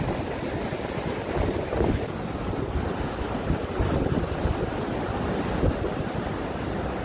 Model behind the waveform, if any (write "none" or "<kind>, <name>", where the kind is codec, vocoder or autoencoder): none